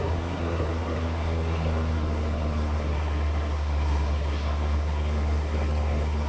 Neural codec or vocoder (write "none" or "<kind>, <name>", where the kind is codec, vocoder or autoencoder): codec, SNAC